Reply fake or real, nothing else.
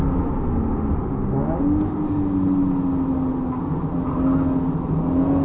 real